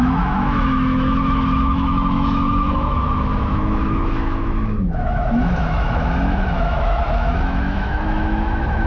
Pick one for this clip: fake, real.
fake